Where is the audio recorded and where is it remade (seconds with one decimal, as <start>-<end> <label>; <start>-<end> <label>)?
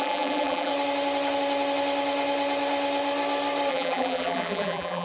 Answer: 0.0-0.7 remade; 0.7-3.7 recorded; 3.7-5.0 remade